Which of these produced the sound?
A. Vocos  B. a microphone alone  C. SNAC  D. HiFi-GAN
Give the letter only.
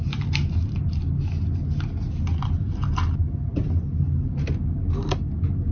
B